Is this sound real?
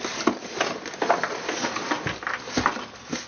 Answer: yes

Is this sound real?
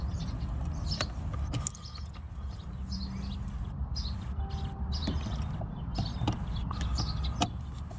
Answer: yes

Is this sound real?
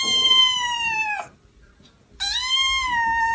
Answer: yes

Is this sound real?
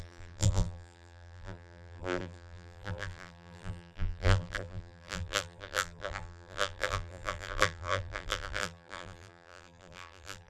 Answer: no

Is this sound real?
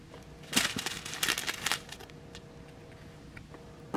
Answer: yes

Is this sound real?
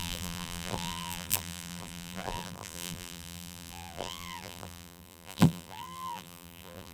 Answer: no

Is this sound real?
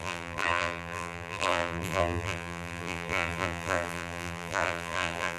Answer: no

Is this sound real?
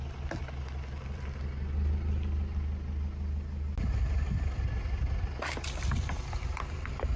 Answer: yes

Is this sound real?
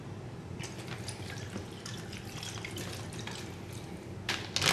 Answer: yes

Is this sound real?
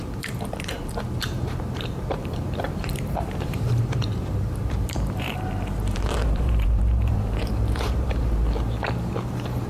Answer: no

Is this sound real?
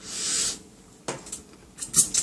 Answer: yes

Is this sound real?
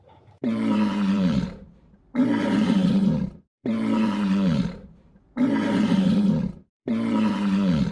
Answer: no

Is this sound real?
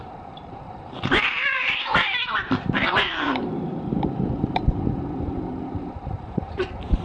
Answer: no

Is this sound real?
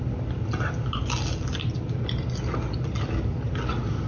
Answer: yes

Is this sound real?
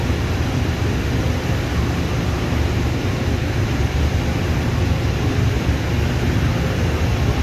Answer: no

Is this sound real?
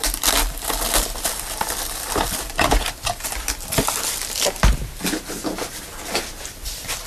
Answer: yes